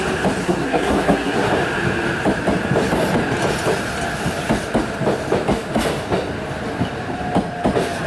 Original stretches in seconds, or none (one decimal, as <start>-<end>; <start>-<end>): 0.0-0.4; 1.5-8.1